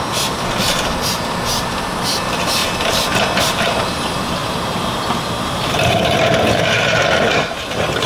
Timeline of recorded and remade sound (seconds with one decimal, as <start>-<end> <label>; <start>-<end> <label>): 0.0-2.6 remade; 2.6-3.4 recorded; 3.4-8.1 remade